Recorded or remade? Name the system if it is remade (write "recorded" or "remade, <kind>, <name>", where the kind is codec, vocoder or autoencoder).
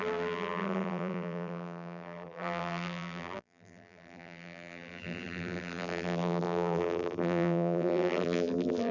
remade, vocoder, BigVGAN v2